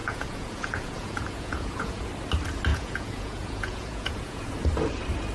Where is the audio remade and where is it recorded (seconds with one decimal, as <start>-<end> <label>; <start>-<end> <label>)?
0.0-2.1 remade; 2.1-2.7 recorded; 2.7-4.5 remade; 4.5-5.3 recorded